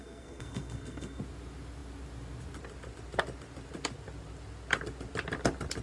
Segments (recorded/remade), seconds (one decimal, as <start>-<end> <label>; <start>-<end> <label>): 0.0-1.2 remade; 1.2-5.8 recorded